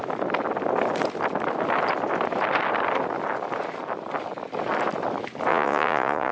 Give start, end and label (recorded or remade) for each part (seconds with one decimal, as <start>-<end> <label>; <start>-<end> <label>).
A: 0.0-5.5 recorded; 5.5-6.3 remade